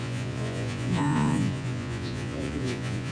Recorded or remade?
remade